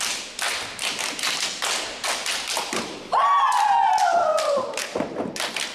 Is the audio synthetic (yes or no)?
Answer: no